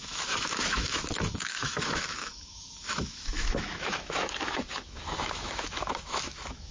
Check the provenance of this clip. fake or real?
fake